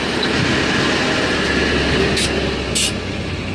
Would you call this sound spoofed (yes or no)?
no